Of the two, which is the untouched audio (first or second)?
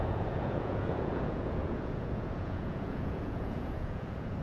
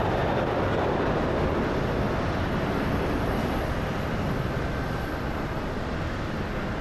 second